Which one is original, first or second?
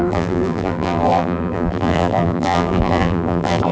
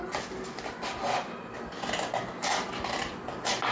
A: second